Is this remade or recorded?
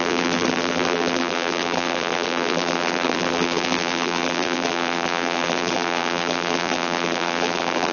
remade